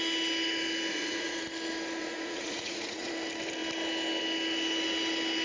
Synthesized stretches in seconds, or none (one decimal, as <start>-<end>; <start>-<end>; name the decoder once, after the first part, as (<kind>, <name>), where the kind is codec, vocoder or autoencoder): 0.9-1.4 (vocoder, Vocos); 2.0-3.1